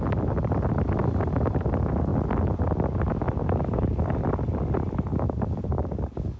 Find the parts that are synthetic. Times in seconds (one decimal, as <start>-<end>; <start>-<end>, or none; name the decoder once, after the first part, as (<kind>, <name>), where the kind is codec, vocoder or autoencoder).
3.1-4.1 (codec, DAC); 5.1-6.4